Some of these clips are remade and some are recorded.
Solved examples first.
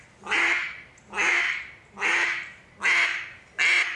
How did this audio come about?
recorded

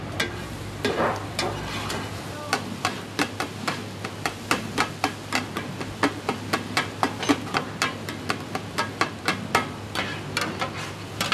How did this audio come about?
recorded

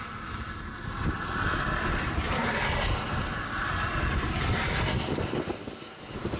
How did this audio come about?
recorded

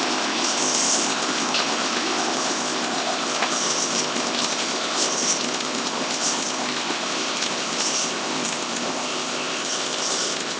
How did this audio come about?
remade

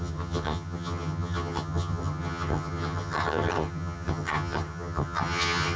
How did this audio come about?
remade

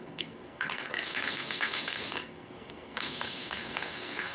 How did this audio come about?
remade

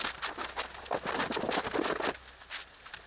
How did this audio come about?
recorded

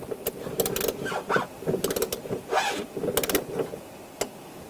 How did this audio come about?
recorded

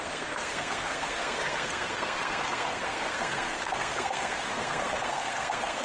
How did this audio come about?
remade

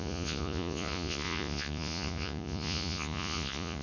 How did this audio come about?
remade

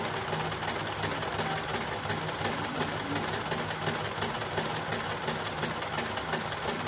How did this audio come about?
recorded